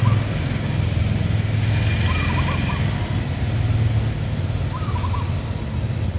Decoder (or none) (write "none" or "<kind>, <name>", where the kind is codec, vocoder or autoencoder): none